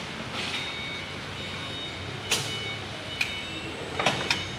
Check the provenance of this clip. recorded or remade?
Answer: recorded